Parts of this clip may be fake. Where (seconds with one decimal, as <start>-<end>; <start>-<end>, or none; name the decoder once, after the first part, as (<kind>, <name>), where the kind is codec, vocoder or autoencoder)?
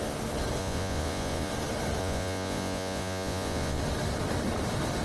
0.6-1.5 (vocoder, Vocos); 2.0-3.8